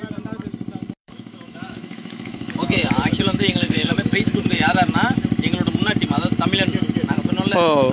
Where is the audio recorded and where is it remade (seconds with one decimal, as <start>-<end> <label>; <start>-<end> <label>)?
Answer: 0.0-1.0 recorded; 1.0-4.4 remade; 4.4-7.9 recorded